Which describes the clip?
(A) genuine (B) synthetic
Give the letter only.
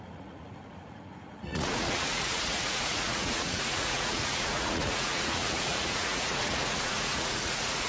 B